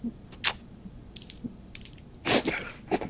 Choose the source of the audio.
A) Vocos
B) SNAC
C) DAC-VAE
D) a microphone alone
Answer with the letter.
D